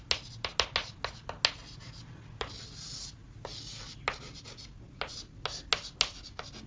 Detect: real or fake real